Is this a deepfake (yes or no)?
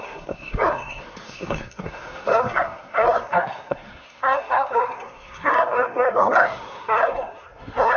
yes